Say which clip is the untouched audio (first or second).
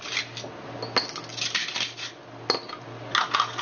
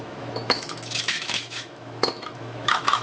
first